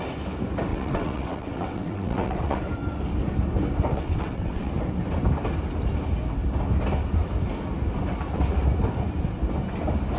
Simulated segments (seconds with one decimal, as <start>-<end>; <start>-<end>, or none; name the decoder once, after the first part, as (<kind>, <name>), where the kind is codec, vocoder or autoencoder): 0.7-2.6 (vocoder, WaveNeXt); 3.9-4.7